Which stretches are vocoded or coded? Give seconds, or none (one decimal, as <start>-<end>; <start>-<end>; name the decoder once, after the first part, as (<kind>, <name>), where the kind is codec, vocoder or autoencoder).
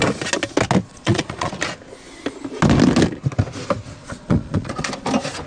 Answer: 0.9-1.5 (vocoder, Vocos); 4.0-4.9